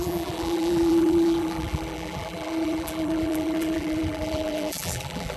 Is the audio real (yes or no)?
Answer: no